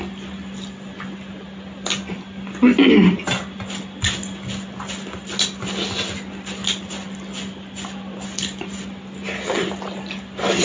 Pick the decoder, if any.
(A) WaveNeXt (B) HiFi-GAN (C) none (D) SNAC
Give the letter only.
C